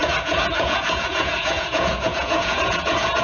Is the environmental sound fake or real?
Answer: fake